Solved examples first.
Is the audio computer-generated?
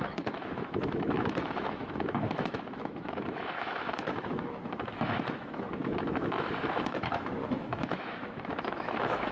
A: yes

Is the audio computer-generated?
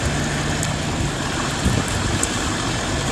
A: no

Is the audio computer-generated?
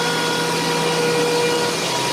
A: no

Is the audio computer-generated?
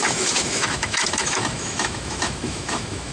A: yes